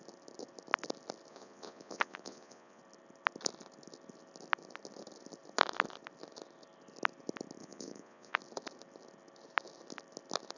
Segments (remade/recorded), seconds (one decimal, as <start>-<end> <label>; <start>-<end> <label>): 0.0-1.3 recorded; 1.3-2.8 remade; 2.8-7.6 recorded; 7.6-8.4 remade; 8.4-10.6 recorded